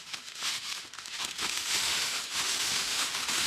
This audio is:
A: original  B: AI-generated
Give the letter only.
B